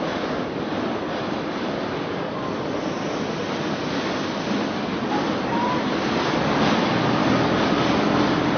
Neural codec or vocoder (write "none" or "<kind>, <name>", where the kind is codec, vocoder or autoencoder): none